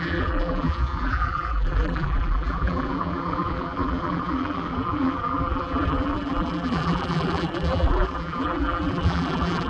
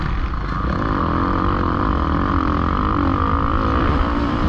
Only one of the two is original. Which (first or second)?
second